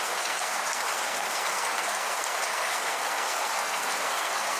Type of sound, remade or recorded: remade